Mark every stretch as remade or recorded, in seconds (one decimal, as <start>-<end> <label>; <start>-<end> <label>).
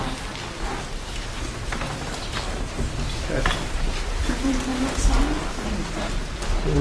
0.0-6.8 recorded